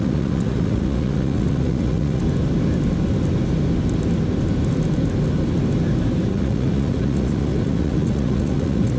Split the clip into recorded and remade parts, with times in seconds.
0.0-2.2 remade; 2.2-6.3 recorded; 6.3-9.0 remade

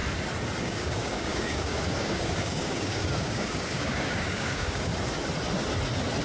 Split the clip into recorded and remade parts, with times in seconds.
0.0-0.6 recorded; 0.6-4.9 remade; 4.9-6.2 recorded

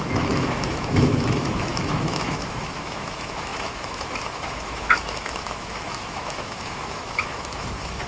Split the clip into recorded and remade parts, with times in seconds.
0.0-8.1 remade

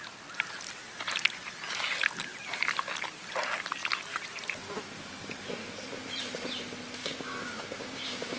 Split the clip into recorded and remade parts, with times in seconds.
0.0-7.0 recorded; 7.0-8.4 remade

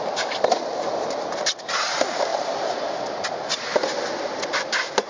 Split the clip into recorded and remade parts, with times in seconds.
0.0-5.1 recorded

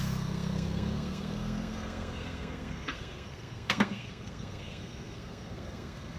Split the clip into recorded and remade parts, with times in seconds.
0.0-6.2 remade

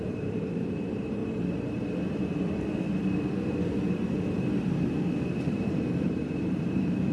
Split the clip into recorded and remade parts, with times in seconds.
0.0-1.2 remade; 1.2-5.4 recorded; 5.4-7.1 remade

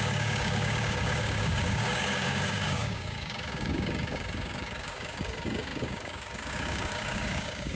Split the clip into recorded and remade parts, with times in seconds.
0.0-7.8 remade